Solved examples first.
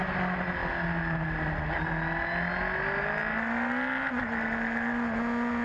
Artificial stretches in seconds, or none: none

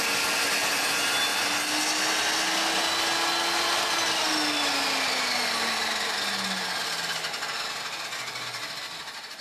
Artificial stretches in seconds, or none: none

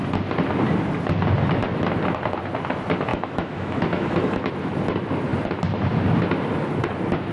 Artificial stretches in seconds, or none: 3.1-4.5 (autoencoder, DAC-VAE)